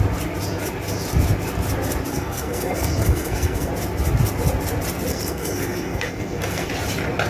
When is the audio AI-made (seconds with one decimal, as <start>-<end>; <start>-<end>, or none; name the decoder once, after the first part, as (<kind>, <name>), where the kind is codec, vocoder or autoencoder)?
2.1-3.7 (codec, SNAC); 5.1-6.7